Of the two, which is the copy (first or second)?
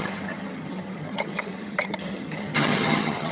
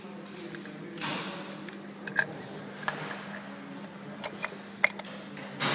first